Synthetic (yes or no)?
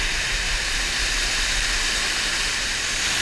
no